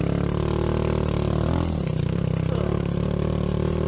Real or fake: real